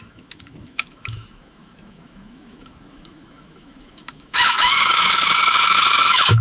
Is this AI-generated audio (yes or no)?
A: yes